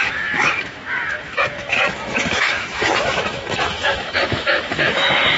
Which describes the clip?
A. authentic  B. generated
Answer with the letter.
B